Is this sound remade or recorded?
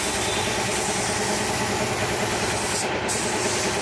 recorded